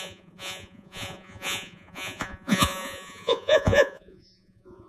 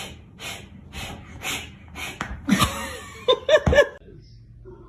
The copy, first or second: first